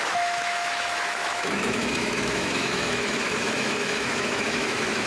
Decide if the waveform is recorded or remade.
remade